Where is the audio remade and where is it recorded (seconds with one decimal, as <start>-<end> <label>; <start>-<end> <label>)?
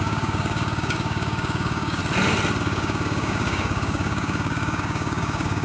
0.0-2.0 remade; 2.0-2.6 recorded; 2.6-5.6 remade